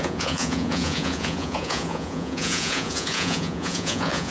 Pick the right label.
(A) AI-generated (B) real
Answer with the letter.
A